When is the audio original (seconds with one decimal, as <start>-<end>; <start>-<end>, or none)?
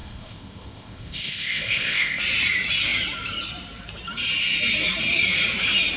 2.2-6.0